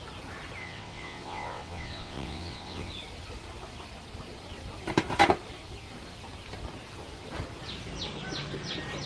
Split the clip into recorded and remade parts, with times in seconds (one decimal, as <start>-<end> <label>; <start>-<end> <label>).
0.0-0.6 recorded; 0.6-2.9 remade; 2.9-9.1 recorded